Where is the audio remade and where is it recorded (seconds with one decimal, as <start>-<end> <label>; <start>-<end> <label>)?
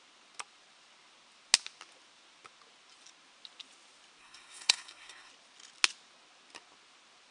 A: 0.0-4.2 recorded; 4.2-5.3 remade; 5.3-7.3 recorded